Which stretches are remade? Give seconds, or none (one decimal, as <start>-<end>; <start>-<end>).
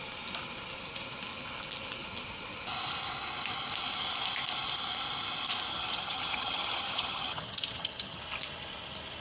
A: 5.7-8.2